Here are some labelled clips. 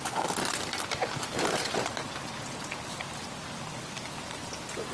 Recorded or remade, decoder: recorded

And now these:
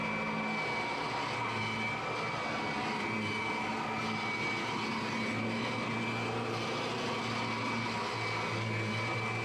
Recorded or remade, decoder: recorded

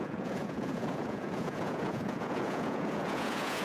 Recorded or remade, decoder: remade, vocoder, Vocos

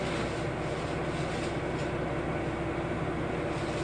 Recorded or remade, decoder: recorded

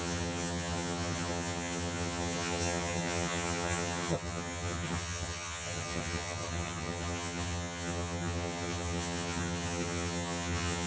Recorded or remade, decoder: remade, vocoder, HiFi-GAN